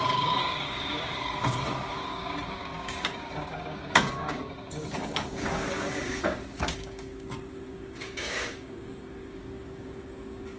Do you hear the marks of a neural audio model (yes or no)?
yes